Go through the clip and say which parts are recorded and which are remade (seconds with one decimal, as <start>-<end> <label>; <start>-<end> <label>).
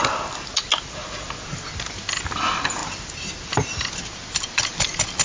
0.0-5.2 recorded